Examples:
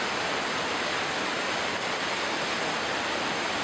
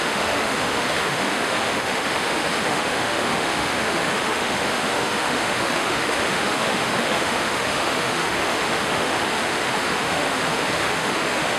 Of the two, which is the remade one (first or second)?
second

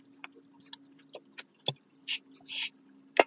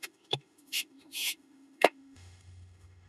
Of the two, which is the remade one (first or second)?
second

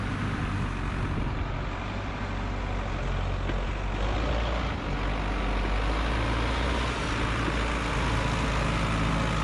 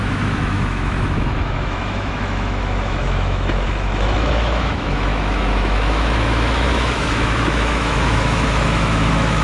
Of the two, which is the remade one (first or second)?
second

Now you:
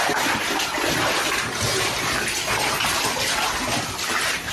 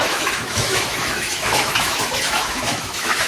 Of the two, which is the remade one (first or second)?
second